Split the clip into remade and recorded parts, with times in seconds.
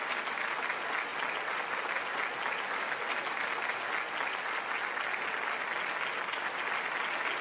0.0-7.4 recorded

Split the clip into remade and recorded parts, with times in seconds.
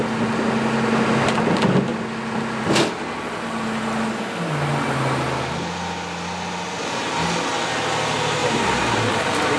0.0-8.4 recorded; 8.4-9.6 remade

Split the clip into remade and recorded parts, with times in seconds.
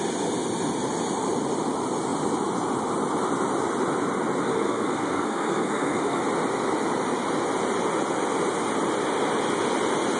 0.0-4.5 recorded; 4.5-6.2 remade; 6.2-10.2 recorded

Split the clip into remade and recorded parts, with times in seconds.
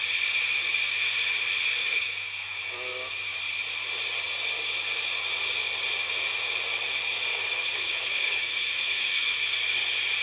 0.0-1.8 recorded; 1.8-3.4 remade; 3.4-7.3 recorded; 7.3-9.4 remade; 9.4-10.2 recorded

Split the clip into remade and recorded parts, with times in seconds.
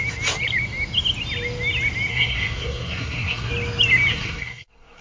0.0-2.1 recorded; 2.1-3.5 remade; 3.5-4.1 recorded; 4.1-5.0 remade